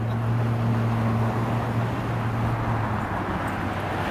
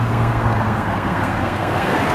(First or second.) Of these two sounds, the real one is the first